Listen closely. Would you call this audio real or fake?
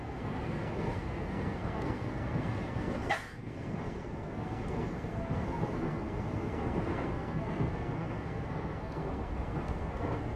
fake